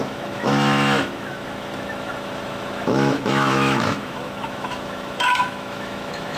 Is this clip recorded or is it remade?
remade